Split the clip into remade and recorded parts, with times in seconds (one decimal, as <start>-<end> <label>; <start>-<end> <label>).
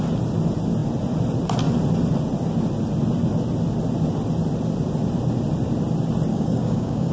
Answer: 0.0-6.3 recorded; 6.3-7.1 remade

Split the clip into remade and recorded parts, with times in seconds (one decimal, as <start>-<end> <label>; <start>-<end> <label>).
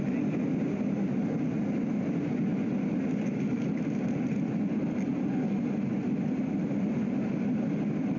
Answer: 0.0-8.2 recorded